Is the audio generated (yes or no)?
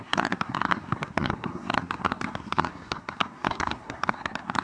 yes